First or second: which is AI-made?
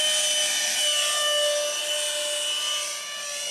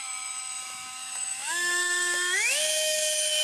second